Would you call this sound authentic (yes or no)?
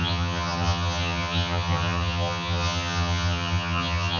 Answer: no